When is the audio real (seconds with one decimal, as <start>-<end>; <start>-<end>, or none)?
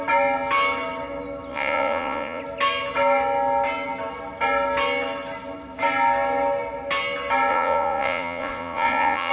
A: 0.0-1.5; 2.4-7.5